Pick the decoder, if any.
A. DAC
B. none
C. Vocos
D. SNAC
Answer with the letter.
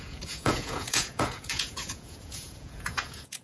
C